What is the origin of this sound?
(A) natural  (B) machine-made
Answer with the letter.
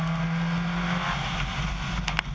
A